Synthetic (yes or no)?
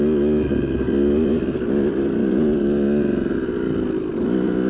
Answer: no